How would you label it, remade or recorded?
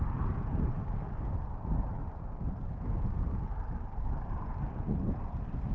remade